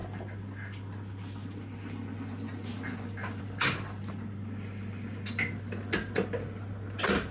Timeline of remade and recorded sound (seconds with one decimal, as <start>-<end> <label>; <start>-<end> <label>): 0.0-7.3 recorded